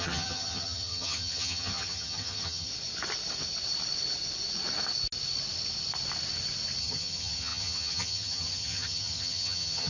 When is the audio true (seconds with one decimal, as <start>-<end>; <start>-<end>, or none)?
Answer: 2.7-6.8

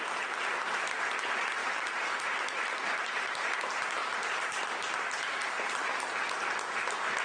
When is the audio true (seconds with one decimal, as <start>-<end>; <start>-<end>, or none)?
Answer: 0.0-1.6; 3.4-4.0; 5.7-7.2

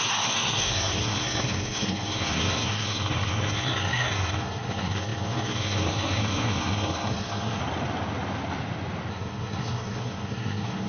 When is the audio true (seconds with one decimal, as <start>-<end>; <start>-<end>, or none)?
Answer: 7.6-9.1

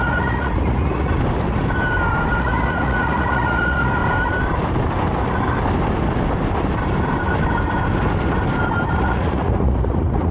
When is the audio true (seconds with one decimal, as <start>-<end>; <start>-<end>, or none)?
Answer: 1.1-2.4; 4.0-9.0

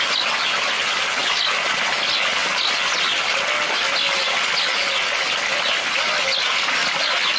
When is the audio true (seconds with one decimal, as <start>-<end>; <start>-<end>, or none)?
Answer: 0.0-7.4

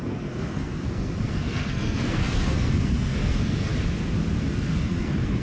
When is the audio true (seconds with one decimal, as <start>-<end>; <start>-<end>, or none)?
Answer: 3.7-4.4